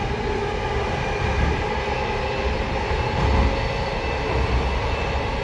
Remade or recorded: recorded